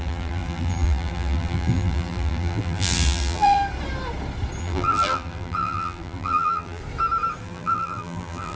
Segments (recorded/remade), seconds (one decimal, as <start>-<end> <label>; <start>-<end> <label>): 0.0-3.6 remade; 3.6-4.6 recorded; 4.6-6.8 remade; 6.8-7.4 recorded; 7.4-8.6 remade